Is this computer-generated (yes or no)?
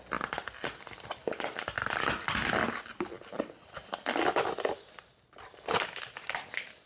no